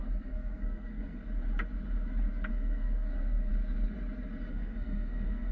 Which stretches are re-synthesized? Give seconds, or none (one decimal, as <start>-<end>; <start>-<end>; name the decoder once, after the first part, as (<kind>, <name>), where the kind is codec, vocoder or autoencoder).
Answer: 0.0-1.2 (codec, SNAC); 2.5-3.5; 4.5-5.5